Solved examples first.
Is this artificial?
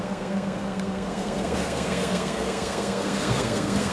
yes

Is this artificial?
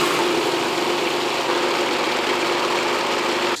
no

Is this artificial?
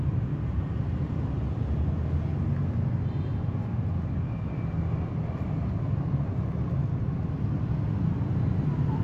no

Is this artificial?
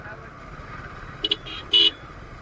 no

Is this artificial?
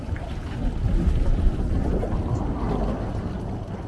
no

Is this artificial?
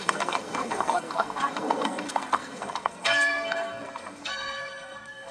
yes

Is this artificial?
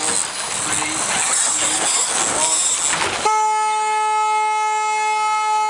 no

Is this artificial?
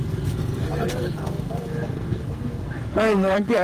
yes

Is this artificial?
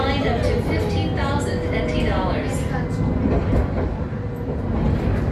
no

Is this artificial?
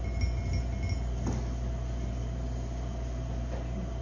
no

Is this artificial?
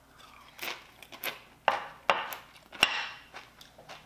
no